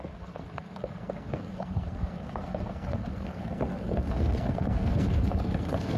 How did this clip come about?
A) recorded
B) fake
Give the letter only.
B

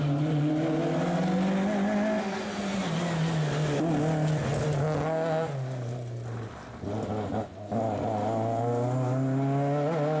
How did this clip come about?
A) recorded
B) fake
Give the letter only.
A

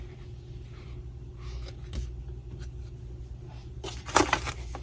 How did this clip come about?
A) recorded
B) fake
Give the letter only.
A